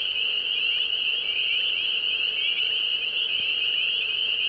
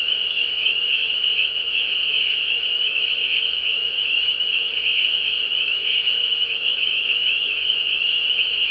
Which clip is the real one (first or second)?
first